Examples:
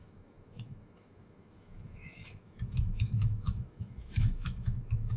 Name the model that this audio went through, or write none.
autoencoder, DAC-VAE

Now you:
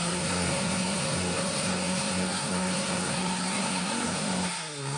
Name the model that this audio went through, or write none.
codec, SNAC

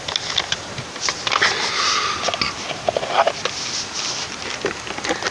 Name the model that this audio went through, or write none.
none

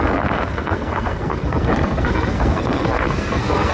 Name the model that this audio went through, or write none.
codec, SNAC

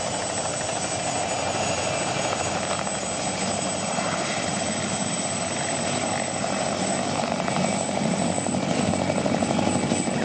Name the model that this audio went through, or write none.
none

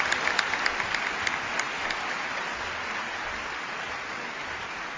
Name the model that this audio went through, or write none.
none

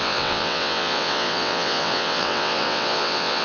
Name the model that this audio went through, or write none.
vocoder, WaveNeXt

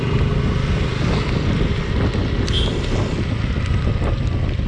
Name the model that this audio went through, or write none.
none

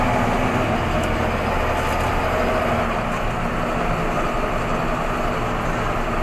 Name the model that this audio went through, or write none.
none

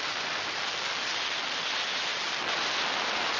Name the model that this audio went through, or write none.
none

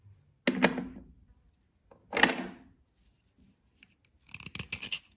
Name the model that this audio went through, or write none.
none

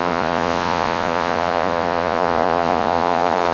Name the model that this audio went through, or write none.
vocoder, Vocos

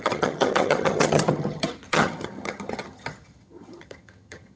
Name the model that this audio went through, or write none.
vocoder, HiFi-GAN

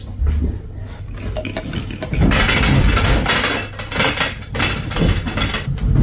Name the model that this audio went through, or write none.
none